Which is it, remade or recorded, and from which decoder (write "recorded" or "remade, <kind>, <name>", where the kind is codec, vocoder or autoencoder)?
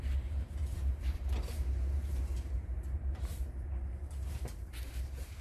remade, vocoder, BigVGAN v2